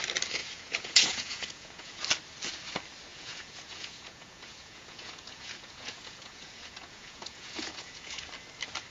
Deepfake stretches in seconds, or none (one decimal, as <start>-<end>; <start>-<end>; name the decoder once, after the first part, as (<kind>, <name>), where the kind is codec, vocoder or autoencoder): 0.4-2.0 (vocoder, Vocos); 3.1-8.3